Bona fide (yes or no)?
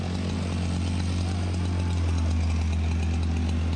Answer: yes